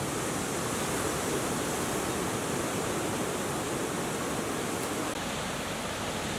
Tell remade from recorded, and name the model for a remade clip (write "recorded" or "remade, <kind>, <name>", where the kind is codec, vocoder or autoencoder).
recorded